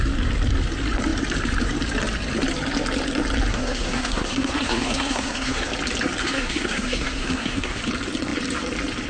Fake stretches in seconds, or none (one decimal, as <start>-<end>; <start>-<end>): 3.5-5.7; 6.2-7.8